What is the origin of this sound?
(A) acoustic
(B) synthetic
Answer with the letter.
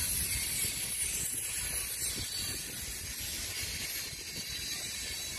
A